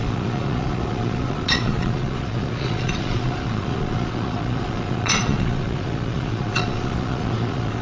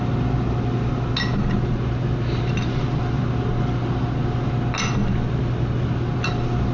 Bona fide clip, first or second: second